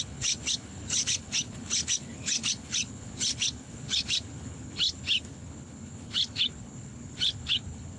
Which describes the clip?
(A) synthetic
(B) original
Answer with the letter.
A